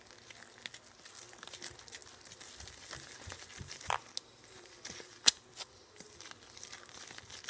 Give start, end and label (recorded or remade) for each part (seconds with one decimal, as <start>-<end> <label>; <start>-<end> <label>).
0.0-7.5 recorded